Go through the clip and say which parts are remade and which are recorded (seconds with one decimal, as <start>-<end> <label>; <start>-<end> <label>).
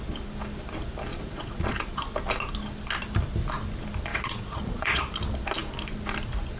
0.0-1.1 recorded; 1.1-2.0 remade; 2.0-4.1 recorded; 4.1-5.0 remade; 5.0-6.6 recorded